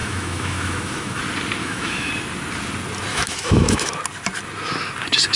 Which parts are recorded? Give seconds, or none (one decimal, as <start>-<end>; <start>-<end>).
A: 1.2-1.6; 2.1-3.1; 3.9-5.4